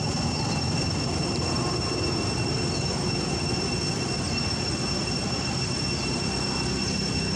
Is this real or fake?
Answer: real